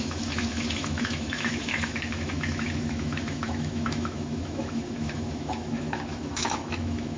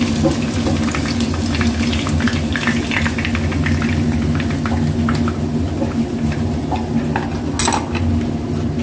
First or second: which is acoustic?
second